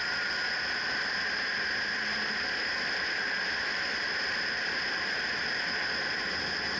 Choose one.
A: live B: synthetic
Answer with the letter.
A